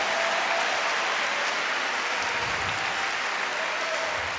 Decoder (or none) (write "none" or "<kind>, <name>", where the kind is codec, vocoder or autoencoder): none